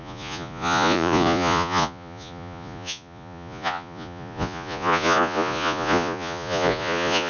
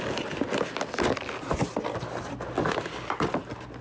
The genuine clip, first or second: second